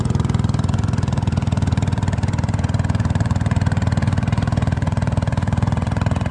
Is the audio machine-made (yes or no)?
yes